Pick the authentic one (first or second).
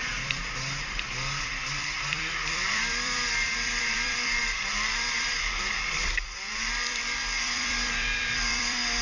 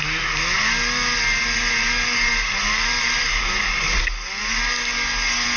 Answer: second